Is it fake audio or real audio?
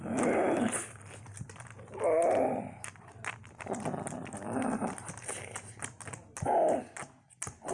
real